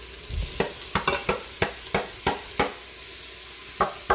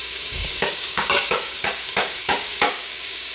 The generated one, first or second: second